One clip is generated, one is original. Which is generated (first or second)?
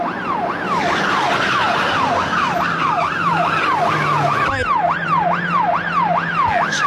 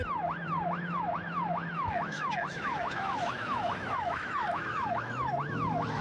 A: second